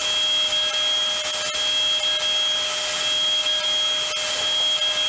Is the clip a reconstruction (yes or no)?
no